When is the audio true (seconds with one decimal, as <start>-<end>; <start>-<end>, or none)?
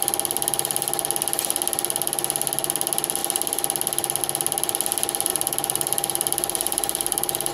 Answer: 0.0-5.3